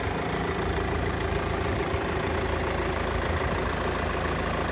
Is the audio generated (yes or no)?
no